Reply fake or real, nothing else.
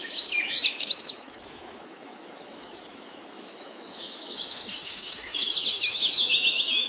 fake